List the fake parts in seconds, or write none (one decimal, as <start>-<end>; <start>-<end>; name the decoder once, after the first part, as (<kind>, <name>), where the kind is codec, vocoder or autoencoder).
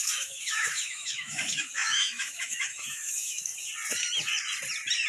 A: 0.0-3.5 (autoencoder, DAC-VAE)